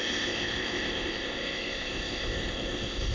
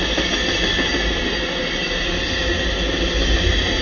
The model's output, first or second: first